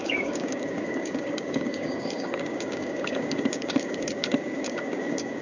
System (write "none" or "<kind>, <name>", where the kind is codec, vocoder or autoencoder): codec, DAC